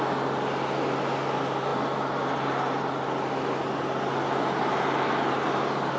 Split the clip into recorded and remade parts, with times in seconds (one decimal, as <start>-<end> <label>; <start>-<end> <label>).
0.0-6.0 recorded